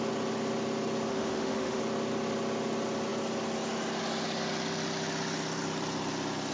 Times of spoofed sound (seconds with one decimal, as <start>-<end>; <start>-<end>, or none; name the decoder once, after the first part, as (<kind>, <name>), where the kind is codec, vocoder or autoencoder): 1.1-1.8 (autoencoder, DAC-VAE)